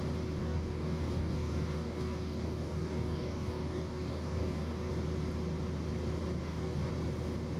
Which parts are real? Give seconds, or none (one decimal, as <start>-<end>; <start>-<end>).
0.0-0.4; 4.9-6.4; 6.9-7.6